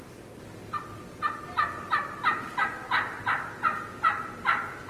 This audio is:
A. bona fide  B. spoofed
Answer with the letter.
A